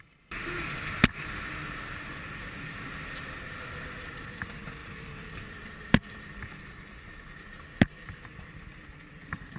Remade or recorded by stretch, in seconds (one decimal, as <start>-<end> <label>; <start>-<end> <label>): 0.0-4.8 recorded; 4.8-6.6 remade; 6.6-9.6 recorded